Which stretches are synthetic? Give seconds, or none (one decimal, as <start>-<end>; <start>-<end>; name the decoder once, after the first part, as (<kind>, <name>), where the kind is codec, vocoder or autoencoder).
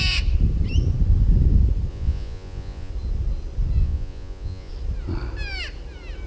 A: 1.9-2.9 (vocoder, Vocos); 3.8-4.7